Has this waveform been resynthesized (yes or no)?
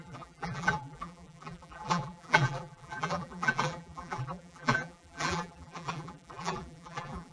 yes